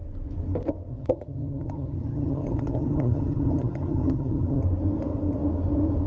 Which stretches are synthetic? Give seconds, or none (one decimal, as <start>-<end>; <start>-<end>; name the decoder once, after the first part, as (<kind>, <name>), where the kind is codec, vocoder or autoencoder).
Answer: 0.9-4.6 (vocoder, HiFi-GAN)